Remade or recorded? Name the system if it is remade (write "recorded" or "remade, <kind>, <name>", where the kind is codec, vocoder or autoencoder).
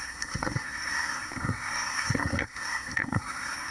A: remade, codec, SNAC